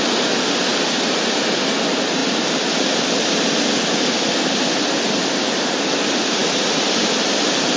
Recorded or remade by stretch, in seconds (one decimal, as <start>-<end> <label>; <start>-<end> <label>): 0.0-7.8 recorded